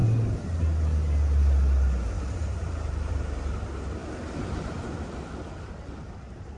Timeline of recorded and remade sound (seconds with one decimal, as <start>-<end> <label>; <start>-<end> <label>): 0.0-6.6 recorded

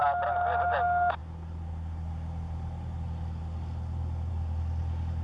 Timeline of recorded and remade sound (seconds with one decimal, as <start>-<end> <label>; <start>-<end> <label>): 0.0-5.2 recorded

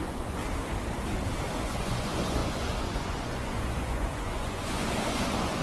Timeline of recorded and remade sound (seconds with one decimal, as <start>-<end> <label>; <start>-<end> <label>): 0.0-0.4 remade; 0.4-1.6 recorded; 1.6-5.6 remade

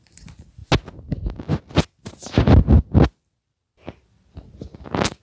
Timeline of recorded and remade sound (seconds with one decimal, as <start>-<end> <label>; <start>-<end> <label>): 0.0-5.2 recorded

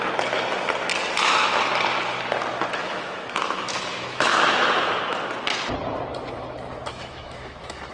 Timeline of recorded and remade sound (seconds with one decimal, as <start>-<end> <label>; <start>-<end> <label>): 0.0-2.8 recorded; 2.8-5.0 remade; 5.0-6.9 recorded; 6.9-7.9 remade

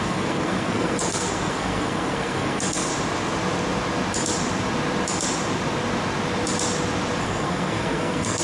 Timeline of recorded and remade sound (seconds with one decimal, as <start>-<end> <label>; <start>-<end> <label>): 0.0-2.9 remade; 2.9-7.2 recorded; 7.2-8.4 remade

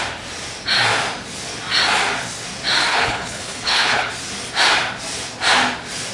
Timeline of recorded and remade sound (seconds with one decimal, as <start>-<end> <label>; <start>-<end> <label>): 0.0-2.9 recorded; 2.9-4.1 remade; 4.1-6.1 recorded